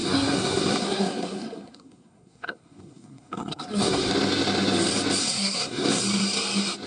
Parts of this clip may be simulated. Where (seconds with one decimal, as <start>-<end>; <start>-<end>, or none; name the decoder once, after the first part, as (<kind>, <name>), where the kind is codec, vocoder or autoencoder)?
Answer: 0.0-4.1 (codec, SNAC); 5.2-6.0